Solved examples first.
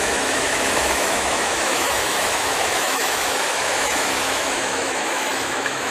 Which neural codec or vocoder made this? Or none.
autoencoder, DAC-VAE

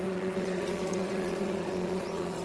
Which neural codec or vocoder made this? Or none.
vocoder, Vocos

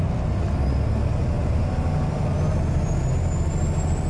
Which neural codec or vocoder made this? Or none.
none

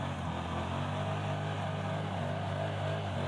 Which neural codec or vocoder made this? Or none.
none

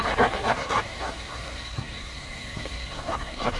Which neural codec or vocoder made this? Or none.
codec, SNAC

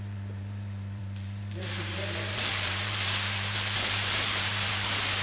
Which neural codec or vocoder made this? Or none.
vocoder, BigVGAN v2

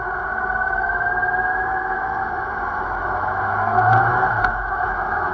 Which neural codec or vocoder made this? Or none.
autoencoder, DAC-VAE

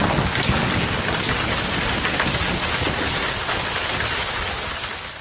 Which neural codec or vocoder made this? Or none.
none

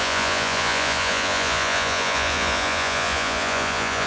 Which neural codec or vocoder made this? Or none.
vocoder, Vocos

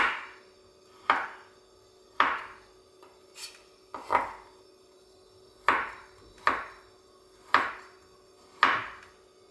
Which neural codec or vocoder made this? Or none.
none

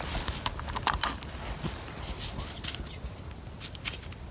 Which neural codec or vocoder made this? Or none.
none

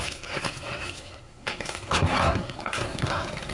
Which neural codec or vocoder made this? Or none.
codec, SNAC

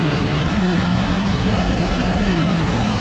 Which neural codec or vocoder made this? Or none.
codec, SNAC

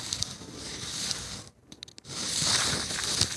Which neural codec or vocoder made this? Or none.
none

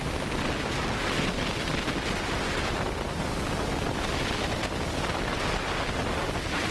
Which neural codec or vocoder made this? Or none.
none